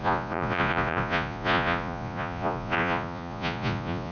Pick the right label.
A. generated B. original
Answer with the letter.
A